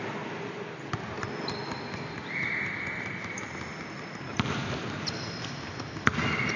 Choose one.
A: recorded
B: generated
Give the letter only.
A